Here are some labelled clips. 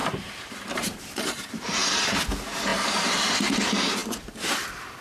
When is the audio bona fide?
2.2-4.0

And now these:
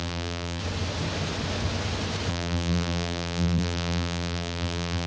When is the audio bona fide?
0.6-2.3

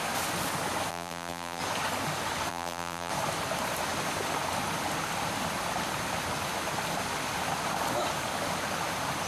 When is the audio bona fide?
0.0-0.9; 1.6-2.5; 3.1-9.3

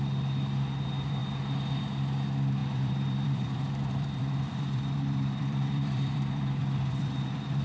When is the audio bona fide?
0.0-2.6